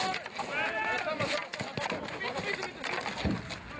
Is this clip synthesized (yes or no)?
no